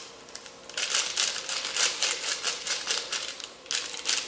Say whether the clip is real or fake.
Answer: real